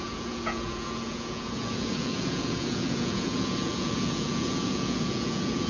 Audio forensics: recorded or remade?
remade